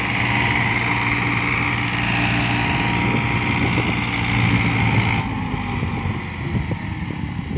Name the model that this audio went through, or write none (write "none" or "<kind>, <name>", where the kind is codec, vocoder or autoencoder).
none